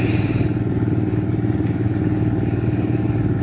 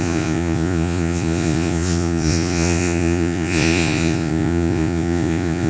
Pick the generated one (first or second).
second